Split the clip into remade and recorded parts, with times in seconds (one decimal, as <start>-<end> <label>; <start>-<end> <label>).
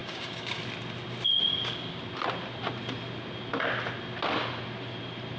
0.0-0.6 remade; 0.6-1.5 recorded; 1.5-2.0 remade; 2.0-5.4 recorded